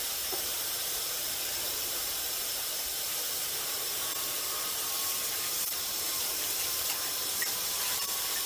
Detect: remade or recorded remade